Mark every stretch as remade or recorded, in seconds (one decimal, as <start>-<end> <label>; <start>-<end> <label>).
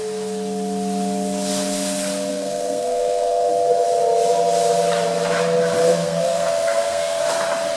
0.0-2.3 recorded; 2.3-3.5 remade; 3.5-5.8 recorded; 5.8-7.2 remade; 7.2-7.8 recorded